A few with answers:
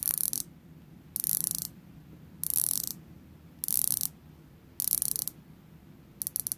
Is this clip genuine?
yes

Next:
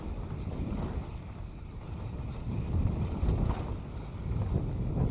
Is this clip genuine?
yes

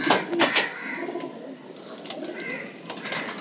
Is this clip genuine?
yes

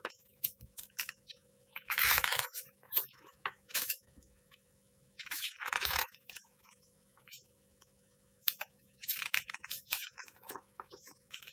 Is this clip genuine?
no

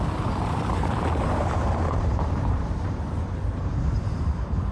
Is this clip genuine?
no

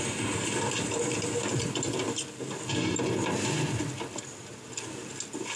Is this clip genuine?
yes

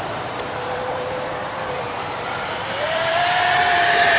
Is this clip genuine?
no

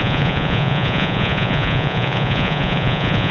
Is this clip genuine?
no